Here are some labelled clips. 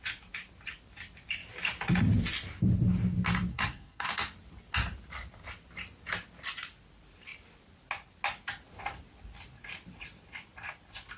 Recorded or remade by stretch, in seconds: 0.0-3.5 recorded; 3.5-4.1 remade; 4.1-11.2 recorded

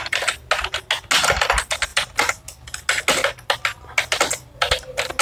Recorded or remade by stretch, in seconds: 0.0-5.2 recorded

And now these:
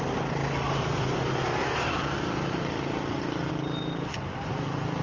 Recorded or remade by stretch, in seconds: 0.0-5.0 recorded

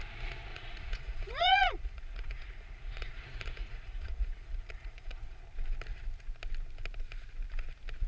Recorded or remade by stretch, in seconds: 0.0-0.5 recorded; 0.5-5.4 remade; 5.4-8.1 recorded

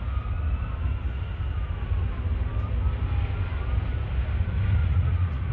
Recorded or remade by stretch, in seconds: 0.0-4.8 recorded; 4.8-5.5 remade

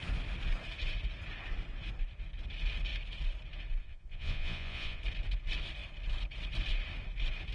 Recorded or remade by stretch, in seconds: 0.0-3.8 recorded; 3.8-5.0 remade; 5.0-7.5 recorded

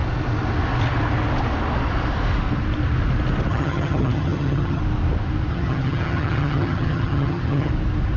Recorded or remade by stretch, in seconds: 0.0-3.5 recorded; 3.5-4.8 remade; 4.8-5.5 recorded; 5.5-7.7 remade; 7.7-8.2 recorded